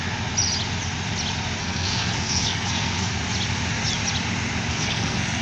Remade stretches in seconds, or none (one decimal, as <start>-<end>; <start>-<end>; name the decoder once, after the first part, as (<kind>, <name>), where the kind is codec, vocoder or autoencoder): 1.6-3.2 (codec, SNAC); 4.7-5.4